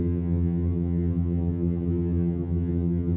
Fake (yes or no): yes